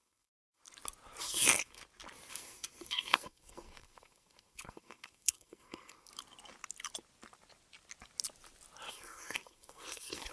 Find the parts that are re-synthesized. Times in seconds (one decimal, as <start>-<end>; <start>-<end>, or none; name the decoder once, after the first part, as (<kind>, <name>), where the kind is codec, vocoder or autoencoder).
0.0-0.6 (codec, SNAC); 1.2-1.8; 2.3-6.1; 8.9-10.3